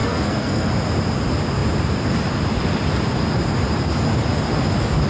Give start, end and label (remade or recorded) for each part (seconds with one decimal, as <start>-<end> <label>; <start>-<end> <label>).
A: 0.0-0.7 remade; 0.7-5.1 recorded